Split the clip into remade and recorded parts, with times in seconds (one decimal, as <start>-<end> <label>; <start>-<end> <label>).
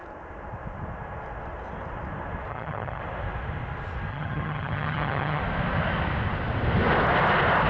0.0-2.5 recorded; 2.5-3.0 remade; 3.0-4.1 recorded; 4.1-5.4 remade; 5.4-7.7 recorded